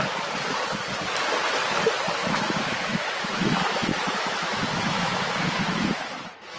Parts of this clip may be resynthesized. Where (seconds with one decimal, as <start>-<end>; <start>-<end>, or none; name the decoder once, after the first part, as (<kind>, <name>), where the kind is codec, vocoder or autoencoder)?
2.2-6.6 (autoencoder, DAC-VAE)